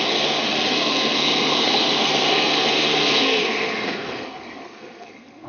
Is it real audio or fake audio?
fake